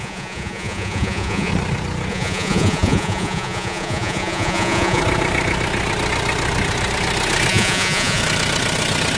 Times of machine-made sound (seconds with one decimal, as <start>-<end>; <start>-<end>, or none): 0.0-1.5; 2.1-5.0; 7.5-8.2